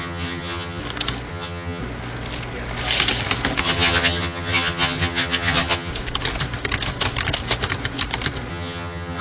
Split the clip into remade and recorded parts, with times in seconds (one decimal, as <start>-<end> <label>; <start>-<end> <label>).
0.0-0.8 remade; 0.8-1.3 recorded; 1.3-1.8 remade; 1.8-3.6 recorded; 3.6-5.9 remade; 5.9-8.5 recorded; 8.5-9.2 remade